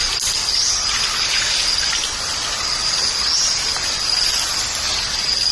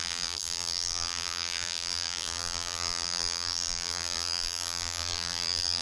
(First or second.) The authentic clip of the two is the first